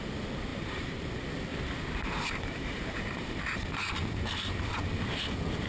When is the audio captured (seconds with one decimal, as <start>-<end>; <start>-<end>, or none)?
0.0-0.5; 1.1-1.5; 4.6-5.7